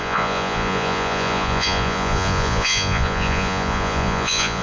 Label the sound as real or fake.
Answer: fake